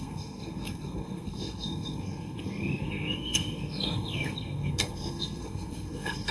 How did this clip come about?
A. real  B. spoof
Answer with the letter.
B